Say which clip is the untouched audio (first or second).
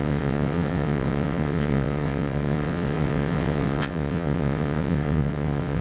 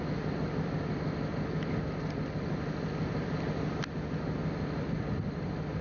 second